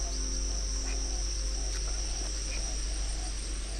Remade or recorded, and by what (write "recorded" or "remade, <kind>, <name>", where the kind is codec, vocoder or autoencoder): recorded